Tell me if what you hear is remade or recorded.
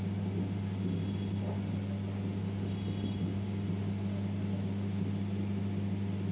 recorded